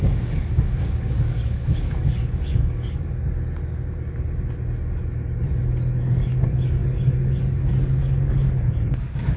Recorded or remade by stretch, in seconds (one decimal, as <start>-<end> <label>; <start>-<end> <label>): 0.0-3.2 remade; 3.2-6.0 recorded; 6.0-9.4 remade